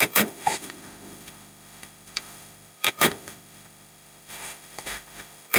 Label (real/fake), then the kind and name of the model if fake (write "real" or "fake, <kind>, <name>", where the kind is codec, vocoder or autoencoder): fake, autoencoder, DAC-VAE